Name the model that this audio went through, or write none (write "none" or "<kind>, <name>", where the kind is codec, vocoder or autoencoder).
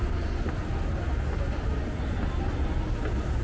none